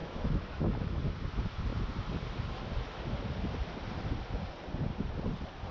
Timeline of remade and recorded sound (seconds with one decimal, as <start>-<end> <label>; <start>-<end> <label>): 0.0-1.0 remade; 1.0-5.7 recorded